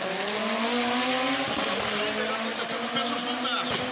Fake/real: real